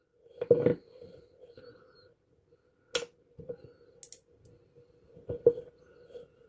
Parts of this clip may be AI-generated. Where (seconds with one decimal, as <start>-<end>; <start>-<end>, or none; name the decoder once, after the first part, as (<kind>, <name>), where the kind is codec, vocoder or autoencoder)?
none